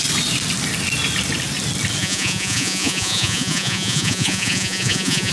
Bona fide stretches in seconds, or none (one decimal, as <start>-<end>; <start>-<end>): 0.0-2.0